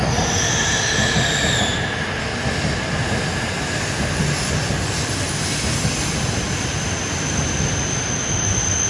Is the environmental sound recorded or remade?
recorded